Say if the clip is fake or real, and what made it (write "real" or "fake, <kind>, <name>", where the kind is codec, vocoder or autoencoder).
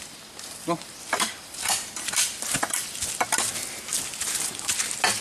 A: real